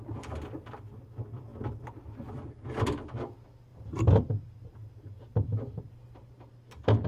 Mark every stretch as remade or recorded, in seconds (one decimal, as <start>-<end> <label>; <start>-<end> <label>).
0.0-3.7 recorded; 3.7-4.2 remade; 4.2-4.7 recorded; 4.7-6.5 remade; 6.5-7.1 recorded